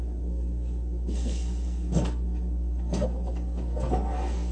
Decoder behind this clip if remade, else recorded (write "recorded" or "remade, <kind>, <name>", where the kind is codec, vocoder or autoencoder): remade, codec, SNAC